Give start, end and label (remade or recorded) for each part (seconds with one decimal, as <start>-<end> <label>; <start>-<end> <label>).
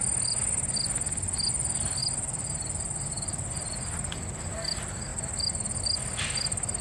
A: 0.0-6.8 recorded